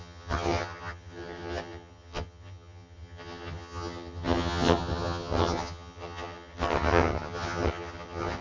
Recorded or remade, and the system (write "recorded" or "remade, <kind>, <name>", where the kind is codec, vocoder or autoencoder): remade, vocoder, HiFi-GAN